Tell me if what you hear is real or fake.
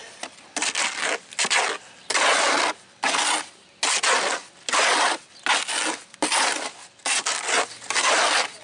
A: real